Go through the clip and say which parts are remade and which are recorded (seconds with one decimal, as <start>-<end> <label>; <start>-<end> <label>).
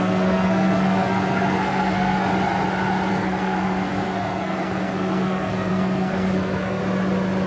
0.0-2.3 remade; 2.3-3.1 recorded; 3.1-6.8 remade; 6.8-7.5 recorded